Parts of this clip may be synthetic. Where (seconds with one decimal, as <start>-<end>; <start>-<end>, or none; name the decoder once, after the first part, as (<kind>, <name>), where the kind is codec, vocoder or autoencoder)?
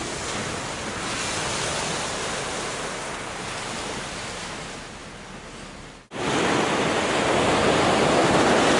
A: none